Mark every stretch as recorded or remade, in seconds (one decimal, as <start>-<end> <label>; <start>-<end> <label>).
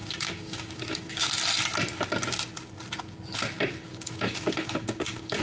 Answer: 0.0-1.3 remade; 1.3-3.9 recorded; 3.9-5.4 remade